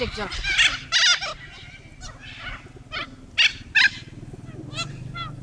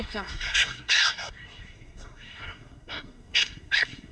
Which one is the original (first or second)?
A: first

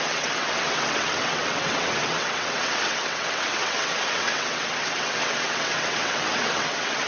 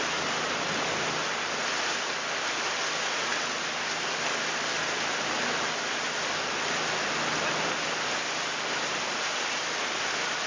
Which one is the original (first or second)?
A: second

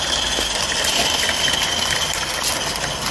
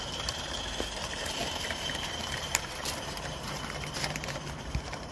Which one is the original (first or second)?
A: first